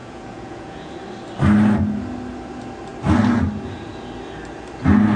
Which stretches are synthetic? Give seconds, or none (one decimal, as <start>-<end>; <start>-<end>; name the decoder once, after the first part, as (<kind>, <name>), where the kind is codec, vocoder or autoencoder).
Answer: 0.0-0.9 (vocoder, Vocos)